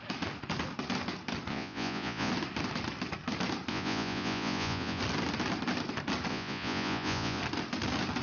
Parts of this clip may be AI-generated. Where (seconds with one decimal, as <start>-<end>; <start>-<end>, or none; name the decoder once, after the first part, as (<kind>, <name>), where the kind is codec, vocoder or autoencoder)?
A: 1.5-2.3 (vocoder, Vocos); 3.7-5.0; 6.3-7.4